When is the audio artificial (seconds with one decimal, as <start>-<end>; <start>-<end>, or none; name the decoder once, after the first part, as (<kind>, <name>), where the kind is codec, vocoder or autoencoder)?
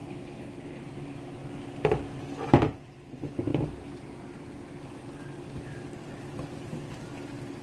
0.0-0.8 (codec, HILCodec)